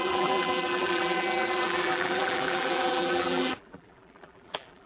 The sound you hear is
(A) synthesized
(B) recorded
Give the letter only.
A